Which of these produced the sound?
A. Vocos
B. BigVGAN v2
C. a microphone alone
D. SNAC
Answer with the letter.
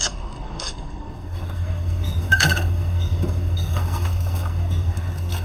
D